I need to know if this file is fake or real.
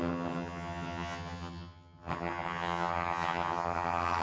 fake